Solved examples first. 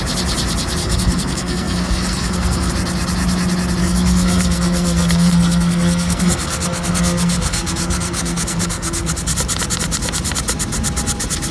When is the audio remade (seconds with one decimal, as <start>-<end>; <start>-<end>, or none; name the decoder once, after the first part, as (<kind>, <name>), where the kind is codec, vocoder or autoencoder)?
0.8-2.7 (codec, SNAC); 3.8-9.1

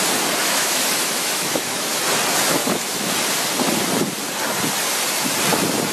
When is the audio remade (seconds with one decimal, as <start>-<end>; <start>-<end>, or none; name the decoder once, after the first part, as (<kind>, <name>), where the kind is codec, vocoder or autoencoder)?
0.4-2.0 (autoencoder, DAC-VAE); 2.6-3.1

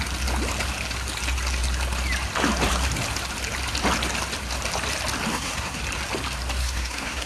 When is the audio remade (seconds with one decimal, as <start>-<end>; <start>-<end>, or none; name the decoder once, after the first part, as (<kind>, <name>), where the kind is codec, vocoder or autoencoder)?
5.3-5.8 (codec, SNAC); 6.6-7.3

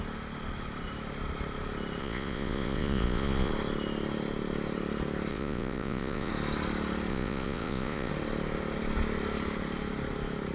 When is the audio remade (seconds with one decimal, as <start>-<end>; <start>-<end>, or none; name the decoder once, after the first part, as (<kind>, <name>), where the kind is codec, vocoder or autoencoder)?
2.0-3.5 (vocoder, Vocos); 5.3-6.3; 7.1-8.1

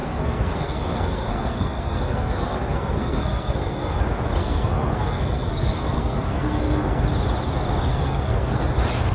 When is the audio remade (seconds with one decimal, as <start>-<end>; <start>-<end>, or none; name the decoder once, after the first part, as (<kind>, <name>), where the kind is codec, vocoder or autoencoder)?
0.0-4.0 (codec, SNAC); 4.4-7.0; 7.9-8.6

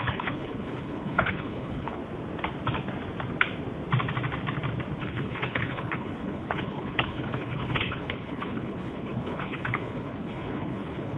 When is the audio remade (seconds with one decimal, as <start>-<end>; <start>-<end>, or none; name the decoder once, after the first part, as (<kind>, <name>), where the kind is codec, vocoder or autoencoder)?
0.0-2.0 (codec, HILCodec); 5.0-11.2

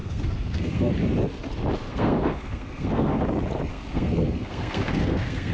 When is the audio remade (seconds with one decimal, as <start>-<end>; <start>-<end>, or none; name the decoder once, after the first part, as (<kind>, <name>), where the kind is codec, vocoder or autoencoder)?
0.0-0.9 (codec, SNAC); 1.9-3.2; 3.7-5.5

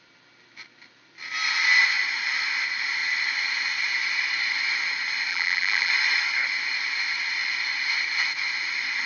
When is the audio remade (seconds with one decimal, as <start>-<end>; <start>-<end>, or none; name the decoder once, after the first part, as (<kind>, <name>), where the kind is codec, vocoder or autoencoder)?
5.3-5.9 (vocoder, BigVGAN v2)